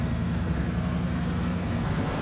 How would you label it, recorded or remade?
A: remade